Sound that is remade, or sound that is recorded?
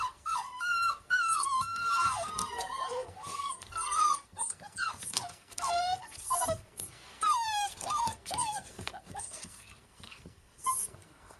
remade